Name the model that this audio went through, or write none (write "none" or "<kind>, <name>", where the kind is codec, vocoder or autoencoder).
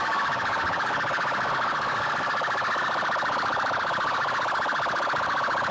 codec, DAC